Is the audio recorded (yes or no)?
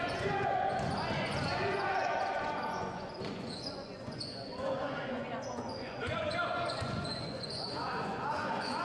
no